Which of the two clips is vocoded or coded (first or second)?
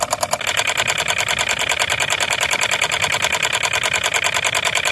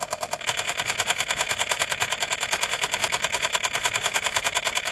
second